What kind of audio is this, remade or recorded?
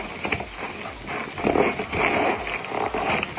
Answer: recorded